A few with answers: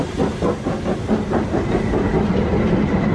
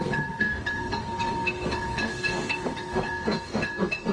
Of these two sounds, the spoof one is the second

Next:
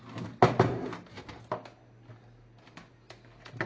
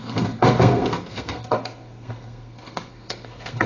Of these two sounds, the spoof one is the second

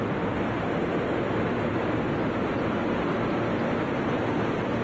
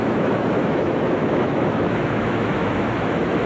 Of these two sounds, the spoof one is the second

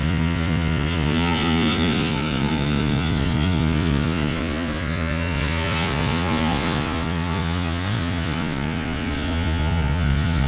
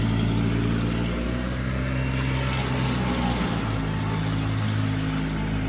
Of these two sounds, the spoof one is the first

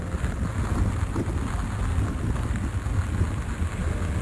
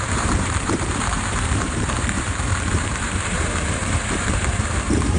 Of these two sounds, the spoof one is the second